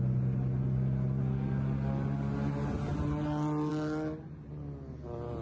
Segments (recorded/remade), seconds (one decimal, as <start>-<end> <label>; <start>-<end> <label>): 0.0-5.4 recorded